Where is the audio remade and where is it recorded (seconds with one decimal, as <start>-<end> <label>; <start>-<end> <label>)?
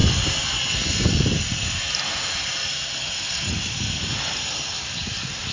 0.0-5.5 recorded